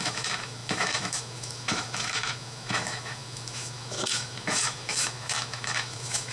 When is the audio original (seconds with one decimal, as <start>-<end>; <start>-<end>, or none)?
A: none